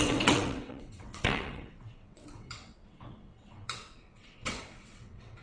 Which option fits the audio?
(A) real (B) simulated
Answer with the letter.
B